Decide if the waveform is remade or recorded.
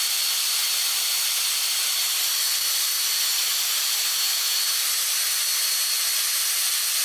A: recorded